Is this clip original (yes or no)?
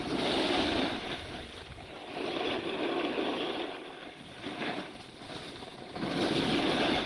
yes